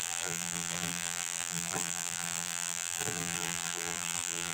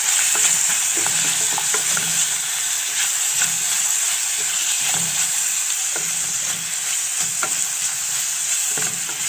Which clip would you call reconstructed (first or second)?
first